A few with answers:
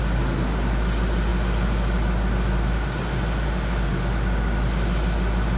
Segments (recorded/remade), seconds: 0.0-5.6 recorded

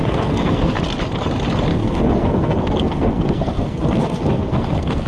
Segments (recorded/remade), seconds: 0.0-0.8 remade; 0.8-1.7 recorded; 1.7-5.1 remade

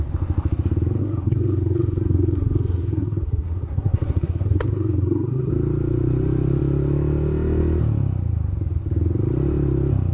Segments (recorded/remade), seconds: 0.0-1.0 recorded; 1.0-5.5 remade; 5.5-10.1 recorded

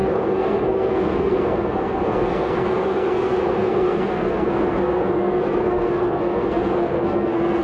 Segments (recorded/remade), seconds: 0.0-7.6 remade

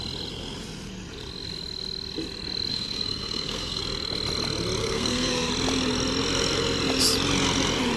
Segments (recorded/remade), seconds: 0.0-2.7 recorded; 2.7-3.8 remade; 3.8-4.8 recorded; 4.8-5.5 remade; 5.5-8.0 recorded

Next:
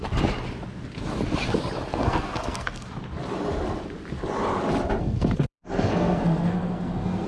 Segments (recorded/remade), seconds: 0.0-1.9 recorded; 1.9-2.9 remade; 2.9-5.0 recorded; 5.0-7.3 remade

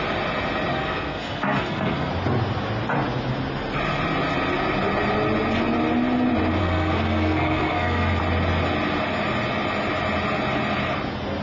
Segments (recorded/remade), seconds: 0.0-0.7 recorded; 0.7-2.1 remade; 2.1-6.6 recorded; 6.6-8.2 remade; 8.2-11.4 recorded